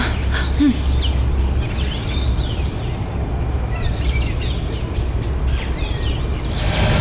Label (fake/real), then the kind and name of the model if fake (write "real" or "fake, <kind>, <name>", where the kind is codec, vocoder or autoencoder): real